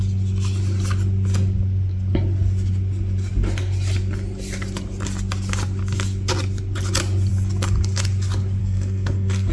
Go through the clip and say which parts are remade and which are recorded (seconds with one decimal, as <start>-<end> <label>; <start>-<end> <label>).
0.0-8.6 recorded; 8.6-9.5 remade